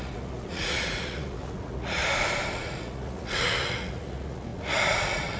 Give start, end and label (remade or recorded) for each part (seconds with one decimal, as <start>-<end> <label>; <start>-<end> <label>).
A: 0.0-2.0 remade; 2.0-2.5 recorded; 2.5-5.4 remade

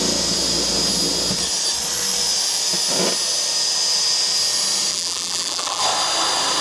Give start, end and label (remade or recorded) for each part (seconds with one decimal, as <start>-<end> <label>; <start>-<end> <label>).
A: 0.0-4.9 recorded; 4.9-5.8 remade; 5.8-6.6 recorded

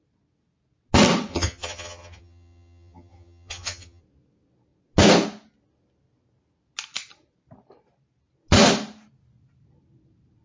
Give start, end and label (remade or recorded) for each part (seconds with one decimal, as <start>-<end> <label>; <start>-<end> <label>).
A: 0.0-1.3 recorded; 1.3-4.0 remade; 4.0-10.4 recorded

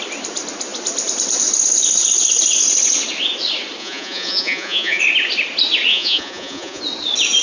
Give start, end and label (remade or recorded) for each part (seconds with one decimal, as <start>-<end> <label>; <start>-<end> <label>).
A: 0.0-3.8 recorded; 3.8-5.0 remade; 5.0-5.9 recorded; 5.9-6.8 remade; 6.8-7.4 recorded

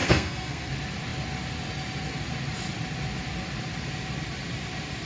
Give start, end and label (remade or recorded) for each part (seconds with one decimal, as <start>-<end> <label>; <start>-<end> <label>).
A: 0.0-0.7 remade; 0.7-5.1 recorded

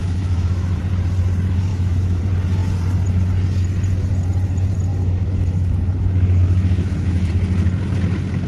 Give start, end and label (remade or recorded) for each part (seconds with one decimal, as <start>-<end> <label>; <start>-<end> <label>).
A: 0.0-0.8 remade; 0.8-1.7 recorded; 1.7-2.2 remade; 2.2-4.9 recorded; 4.9-7.3 remade; 7.3-8.5 recorded